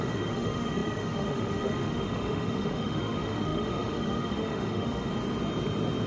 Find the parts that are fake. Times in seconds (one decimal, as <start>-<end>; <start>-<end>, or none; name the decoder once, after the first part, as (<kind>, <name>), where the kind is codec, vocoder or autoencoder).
0.0-5.1 (autoencoder, DAC-VAE)